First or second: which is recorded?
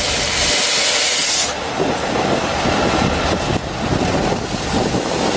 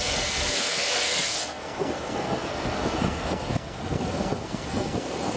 first